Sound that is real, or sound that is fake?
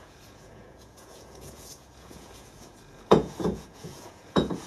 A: fake